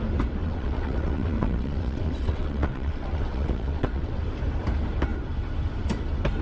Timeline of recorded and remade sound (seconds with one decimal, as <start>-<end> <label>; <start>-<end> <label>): 0.0-0.4 recorded; 0.4-4.2 remade; 4.2-6.4 recorded